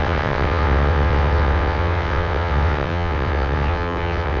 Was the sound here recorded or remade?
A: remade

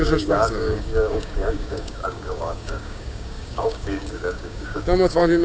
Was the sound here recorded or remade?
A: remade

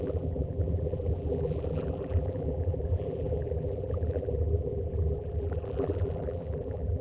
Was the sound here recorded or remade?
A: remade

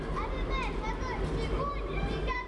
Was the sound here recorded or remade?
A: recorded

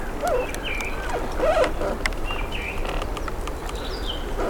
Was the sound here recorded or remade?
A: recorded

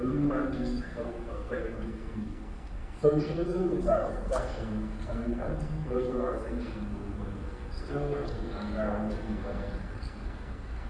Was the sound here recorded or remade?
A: remade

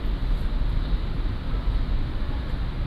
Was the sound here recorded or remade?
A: recorded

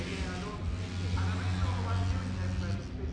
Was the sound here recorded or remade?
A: recorded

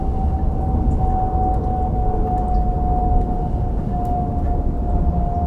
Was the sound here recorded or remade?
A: recorded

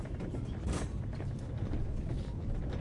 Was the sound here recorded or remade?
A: remade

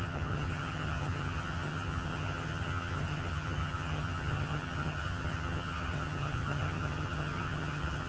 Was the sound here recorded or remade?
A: remade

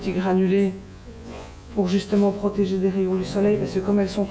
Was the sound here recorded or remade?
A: remade